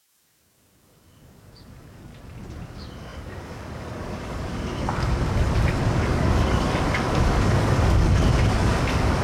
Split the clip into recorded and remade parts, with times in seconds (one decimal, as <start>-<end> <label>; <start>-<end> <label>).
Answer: 0.0-2.1 remade; 2.1-2.6 recorded; 2.6-9.2 remade